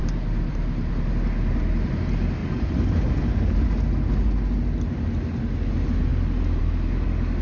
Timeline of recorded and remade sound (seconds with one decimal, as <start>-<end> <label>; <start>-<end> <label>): 0.0-1.1 remade; 1.1-2.4 recorded; 2.4-3.2 remade; 3.2-7.4 recorded